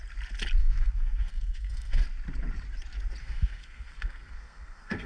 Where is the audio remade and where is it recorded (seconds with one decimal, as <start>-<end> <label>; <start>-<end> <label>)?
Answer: 0.0-0.6 recorded; 0.6-2.0 remade; 2.0-3.2 recorded; 3.2-5.1 remade